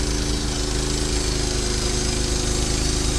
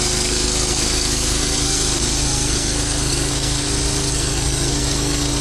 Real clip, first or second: first